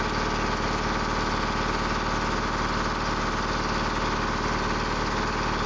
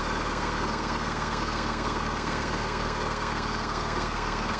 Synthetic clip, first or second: second